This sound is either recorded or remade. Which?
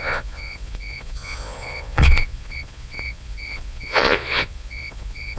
remade